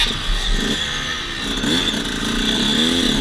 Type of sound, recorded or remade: recorded